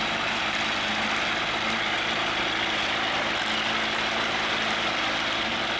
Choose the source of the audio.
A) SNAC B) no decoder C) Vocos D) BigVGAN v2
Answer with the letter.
B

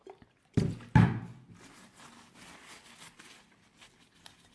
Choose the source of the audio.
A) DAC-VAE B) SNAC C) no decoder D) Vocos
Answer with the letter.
C